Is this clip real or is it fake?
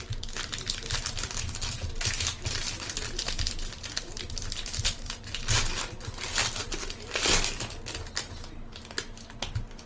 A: real